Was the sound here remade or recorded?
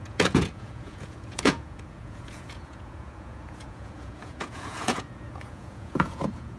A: remade